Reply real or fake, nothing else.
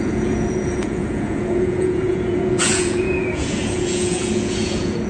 fake